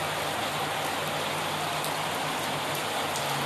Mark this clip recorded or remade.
recorded